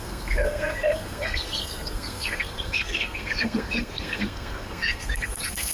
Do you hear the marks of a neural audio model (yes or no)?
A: yes